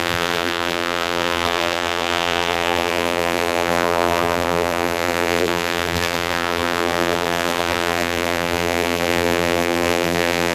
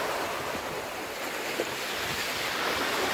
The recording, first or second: second